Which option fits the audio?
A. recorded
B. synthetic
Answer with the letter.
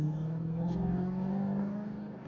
B